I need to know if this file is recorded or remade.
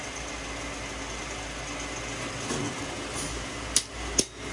recorded